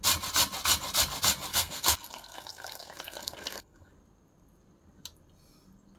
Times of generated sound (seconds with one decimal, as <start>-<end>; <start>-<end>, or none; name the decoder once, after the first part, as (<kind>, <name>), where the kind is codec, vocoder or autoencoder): 1.5-3.9 (codec, SNAC)